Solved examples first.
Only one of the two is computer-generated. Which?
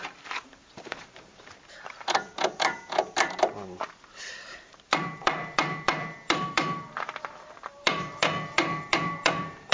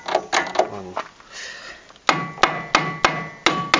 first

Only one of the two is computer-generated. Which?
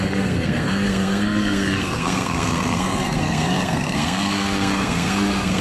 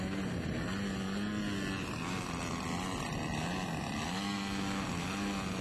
first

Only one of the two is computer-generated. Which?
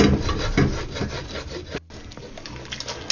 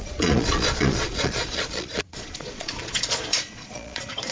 second